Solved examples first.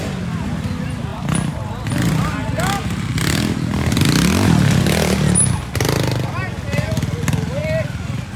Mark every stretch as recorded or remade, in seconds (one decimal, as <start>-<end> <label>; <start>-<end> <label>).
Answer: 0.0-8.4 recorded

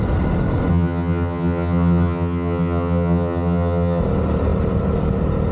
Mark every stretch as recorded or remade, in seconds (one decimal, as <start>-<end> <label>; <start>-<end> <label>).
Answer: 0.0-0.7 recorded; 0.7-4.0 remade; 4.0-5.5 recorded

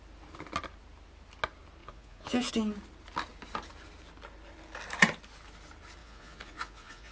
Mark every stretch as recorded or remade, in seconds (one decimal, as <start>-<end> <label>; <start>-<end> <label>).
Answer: 0.0-1.8 recorded; 1.8-2.5 remade; 2.5-6.0 recorded; 6.0-7.1 remade

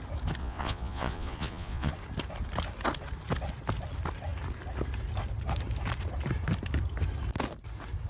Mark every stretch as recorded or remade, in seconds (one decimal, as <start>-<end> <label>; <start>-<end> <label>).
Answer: 0.0-0.4 recorded; 0.4-1.9 remade; 1.9-8.1 recorded

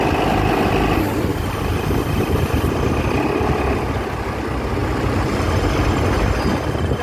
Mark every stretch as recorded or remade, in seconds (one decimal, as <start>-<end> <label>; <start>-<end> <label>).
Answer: 0.0-7.0 recorded

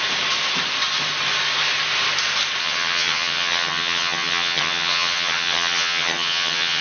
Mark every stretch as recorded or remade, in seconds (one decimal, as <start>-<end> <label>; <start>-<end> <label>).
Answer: 0.0-2.6 recorded; 2.6-6.8 remade

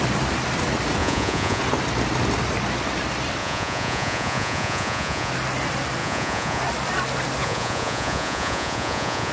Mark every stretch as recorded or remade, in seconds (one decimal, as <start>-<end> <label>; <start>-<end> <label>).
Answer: 0.0-1.0 recorded; 1.0-1.6 remade; 1.6-3.4 recorded; 3.4-5.3 remade; 5.3-6.0 recorded; 6.0-6.6 remade; 6.6-7.4 recorded; 7.4-9.3 remade

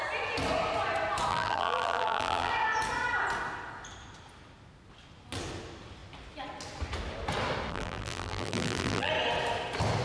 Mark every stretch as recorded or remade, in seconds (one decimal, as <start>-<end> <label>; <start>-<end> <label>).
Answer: 0.0-1.3 recorded; 1.3-2.5 remade; 2.5-7.7 recorded; 7.7-9.1 remade; 9.1-10.0 recorded